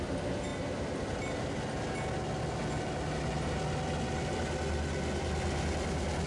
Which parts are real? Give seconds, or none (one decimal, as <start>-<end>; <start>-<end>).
0.0-6.3